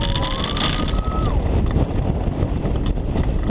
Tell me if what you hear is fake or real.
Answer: real